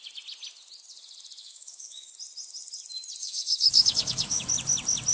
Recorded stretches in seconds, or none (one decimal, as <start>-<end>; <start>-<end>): 0.0-1.4; 2.1-3.2; 4.5-5.1